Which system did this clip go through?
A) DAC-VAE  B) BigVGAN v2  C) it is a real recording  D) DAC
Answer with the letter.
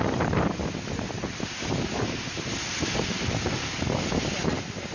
C